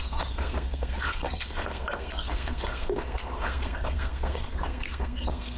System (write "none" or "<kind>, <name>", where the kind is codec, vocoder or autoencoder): codec, SNAC